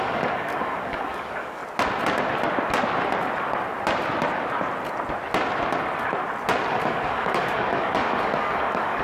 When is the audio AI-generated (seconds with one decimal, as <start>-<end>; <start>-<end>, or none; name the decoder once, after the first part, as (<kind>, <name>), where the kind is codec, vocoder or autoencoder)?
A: 0.0-1.6 (codec, DAC); 6.7-9.0